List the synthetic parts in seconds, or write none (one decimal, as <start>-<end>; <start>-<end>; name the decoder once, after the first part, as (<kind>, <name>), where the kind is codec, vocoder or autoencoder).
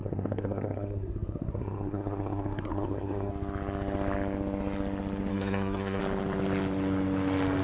0.0-3.3 (codec, SNAC); 5.3-6.0